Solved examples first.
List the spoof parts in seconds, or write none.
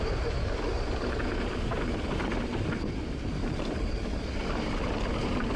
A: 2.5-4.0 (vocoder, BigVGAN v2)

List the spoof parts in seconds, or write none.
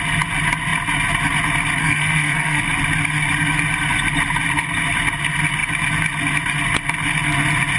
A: 1.8-2.6 (codec, SNAC)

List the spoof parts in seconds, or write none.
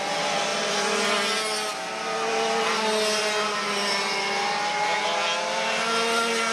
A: none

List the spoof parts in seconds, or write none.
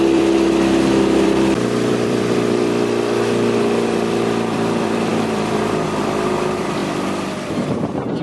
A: 0.0-8.2 (vocoder, BigVGAN v2)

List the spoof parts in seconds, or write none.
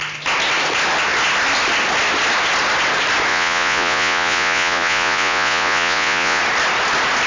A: 3.3-6.4 (vocoder, Vocos)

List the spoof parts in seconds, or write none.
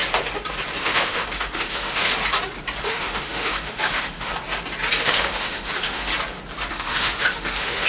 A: 0.8-2.1 (autoencoder, DAC-VAE); 2.8-4.3; 5.0-6.1; 6.7-7.9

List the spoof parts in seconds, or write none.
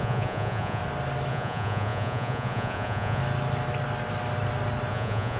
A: 0.0-0.8 (vocoder, Vocos); 1.3-3.2; 4.9-5.4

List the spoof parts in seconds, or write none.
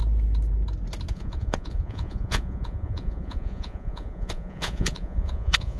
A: 1.1-5.8 (vocoder, Vocos)